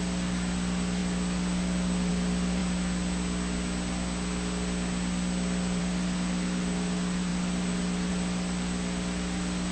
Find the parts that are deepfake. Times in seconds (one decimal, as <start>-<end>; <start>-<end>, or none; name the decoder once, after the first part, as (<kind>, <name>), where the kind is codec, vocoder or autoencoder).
0.0-2.6 (vocoder, BigVGAN v2); 5.8-9.7